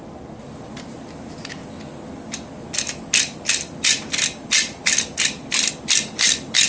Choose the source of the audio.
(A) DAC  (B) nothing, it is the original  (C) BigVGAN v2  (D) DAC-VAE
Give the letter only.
B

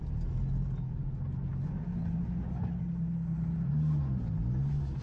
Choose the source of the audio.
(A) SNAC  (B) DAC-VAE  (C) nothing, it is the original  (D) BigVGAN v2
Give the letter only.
C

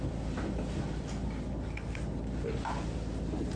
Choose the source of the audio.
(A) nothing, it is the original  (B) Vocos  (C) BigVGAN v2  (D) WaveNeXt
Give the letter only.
A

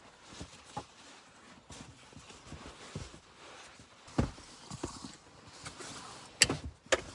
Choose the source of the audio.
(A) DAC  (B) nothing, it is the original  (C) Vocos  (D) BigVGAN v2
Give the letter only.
B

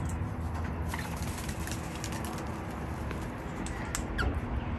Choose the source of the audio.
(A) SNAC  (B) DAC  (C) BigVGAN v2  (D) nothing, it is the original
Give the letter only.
D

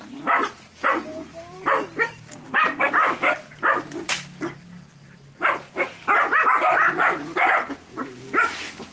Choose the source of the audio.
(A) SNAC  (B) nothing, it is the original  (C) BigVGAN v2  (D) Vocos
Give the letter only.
B